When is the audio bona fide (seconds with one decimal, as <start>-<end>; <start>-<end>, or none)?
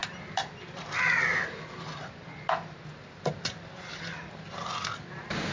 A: 0.0-5.5